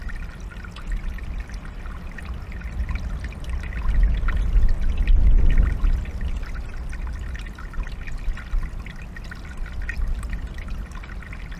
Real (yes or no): yes